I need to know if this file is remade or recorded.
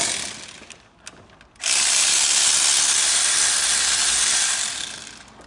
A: recorded